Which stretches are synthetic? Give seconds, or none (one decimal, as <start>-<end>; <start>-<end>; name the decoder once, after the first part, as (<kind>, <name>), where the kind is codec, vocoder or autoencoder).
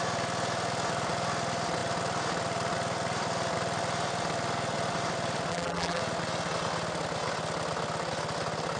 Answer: 5.5-6.0 (vocoder, BigVGAN v2)